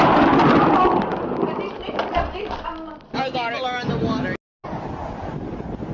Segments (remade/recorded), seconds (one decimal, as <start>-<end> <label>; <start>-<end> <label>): 0.0-5.9 recorded